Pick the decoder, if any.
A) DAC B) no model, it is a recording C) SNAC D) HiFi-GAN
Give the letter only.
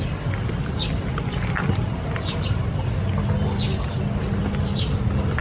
B